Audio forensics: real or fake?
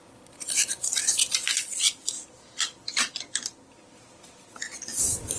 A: fake